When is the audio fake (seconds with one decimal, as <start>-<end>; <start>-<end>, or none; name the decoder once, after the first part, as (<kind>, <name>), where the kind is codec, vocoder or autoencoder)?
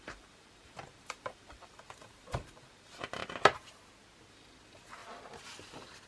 0.0-3.2 (vocoder, BigVGAN v2); 4.3-5.0